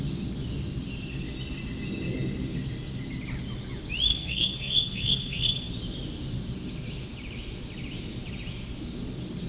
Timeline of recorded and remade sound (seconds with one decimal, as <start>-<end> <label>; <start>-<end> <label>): 0.0-4.1 recorded; 4.1-5.7 remade; 5.7-9.5 recorded